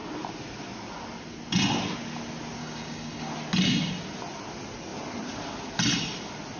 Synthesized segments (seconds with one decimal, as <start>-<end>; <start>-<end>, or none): 2.6-3.3